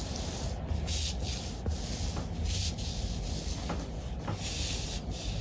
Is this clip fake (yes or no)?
no